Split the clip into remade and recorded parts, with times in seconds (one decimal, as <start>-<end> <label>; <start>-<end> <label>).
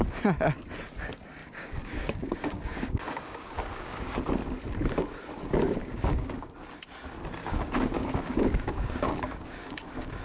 0.0-1.4 recorded; 1.4-4.2 remade; 4.2-5.8 recorded; 5.8-6.5 remade; 6.5-7.4 recorded; 7.4-10.2 remade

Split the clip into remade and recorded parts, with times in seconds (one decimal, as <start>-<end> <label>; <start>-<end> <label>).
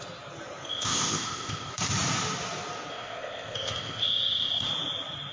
0.0-0.7 recorded; 0.7-1.7 remade; 1.7-2.9 recorded; 2.9-4.7 remade; 4.7-5.3 recorded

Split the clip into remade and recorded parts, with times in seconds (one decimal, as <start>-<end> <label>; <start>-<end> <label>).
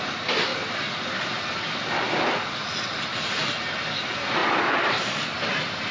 0.0-3.1 recorded; 3.1-3.9 remade; 3.9-4.4 recorded; 4.4-5.1 remade; 5.1-5.9 recorded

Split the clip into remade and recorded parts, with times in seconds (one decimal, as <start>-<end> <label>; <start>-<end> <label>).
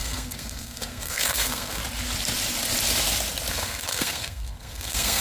0.0-1.8 remade; 1.8-3.5 recorded; 3.5-5.2 remade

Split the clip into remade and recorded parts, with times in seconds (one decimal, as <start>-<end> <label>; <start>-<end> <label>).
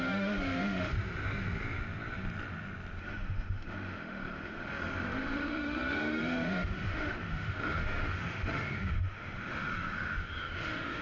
0.0-0.9 remade; 0.9-3.0 recorded; 3.0-11.0 remade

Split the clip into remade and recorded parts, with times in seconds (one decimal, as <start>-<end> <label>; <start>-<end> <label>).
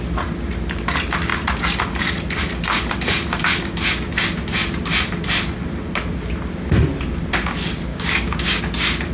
0.0-7.9 recorded; 7.9-8.6 remade; 8.6-9.1 recorded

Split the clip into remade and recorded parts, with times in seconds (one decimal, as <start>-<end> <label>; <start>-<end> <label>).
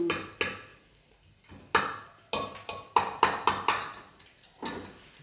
0.0-5.2 recorded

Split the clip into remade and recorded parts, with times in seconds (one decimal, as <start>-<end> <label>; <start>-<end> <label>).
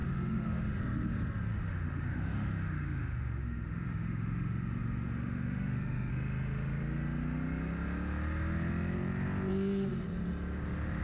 0.0-0.8 remade; 0.8-1.5 recorded; 1.5-6.1 remade; 6.1-11.0 recorded